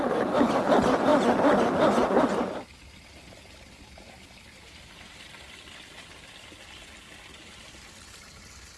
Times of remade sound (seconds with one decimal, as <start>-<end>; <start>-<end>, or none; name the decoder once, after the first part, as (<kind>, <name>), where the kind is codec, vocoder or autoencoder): none